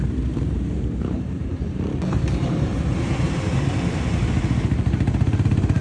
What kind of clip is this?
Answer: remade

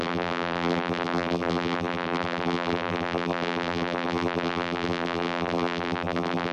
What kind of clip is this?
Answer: remade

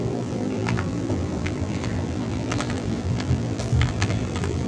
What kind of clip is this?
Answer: remade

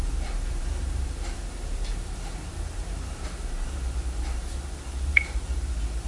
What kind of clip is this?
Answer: remade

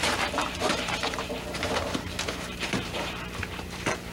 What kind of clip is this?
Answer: remade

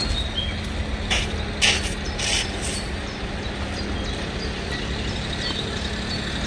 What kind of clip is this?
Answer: recorded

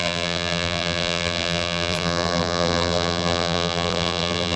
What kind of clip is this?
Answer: remade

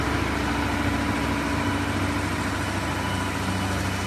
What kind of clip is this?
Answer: recorded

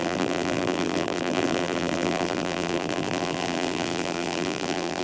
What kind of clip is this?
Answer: remade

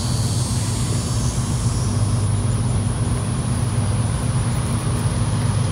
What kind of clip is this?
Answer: recorded